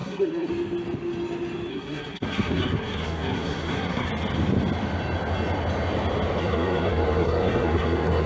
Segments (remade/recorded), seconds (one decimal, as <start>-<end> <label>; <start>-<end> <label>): 0.0-0.5 remade; 0.5-1.7 recorded; 1.7-4.1 remade; 4.1-6.4 recorded; 6.4-8.3 remade